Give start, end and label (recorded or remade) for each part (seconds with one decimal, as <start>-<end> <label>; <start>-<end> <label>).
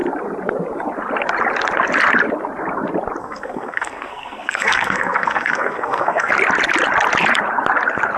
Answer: 0.0-3.2 recorded; 3.2-6.3 remade; 6.3-8.2 recorded